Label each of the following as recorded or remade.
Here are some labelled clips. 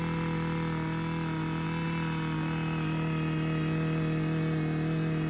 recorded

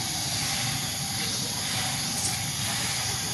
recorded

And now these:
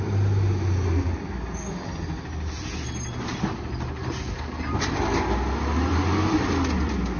recorded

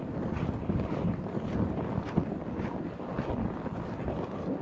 recorded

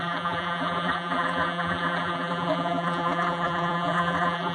remade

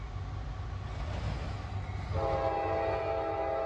recorded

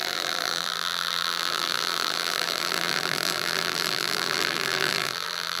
remade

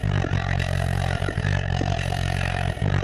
remade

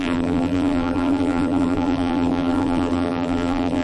remade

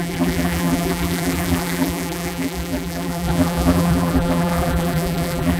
remade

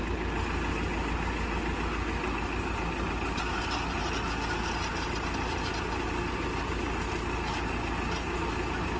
recorded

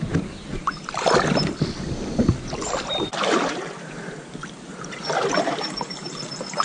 remade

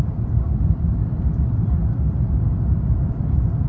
remade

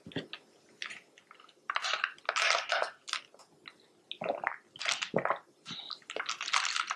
recorded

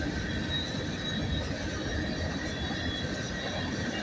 recorded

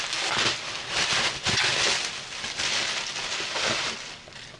remade